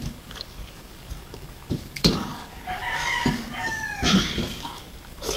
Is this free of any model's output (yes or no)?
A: no